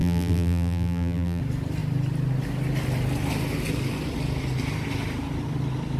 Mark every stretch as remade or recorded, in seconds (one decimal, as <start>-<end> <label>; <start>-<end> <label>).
0.0-1.4 remade; 1.4-6.0 recorded